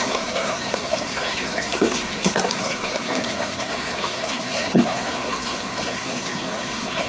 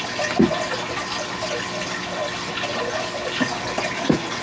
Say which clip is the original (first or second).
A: second